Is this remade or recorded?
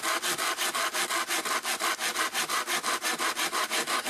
recorded